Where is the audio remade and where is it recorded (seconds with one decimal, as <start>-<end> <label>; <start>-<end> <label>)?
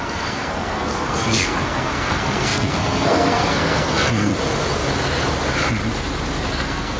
0.0-4.3 remade; 4.3-6.5 recorded; 6.5-7.0 remade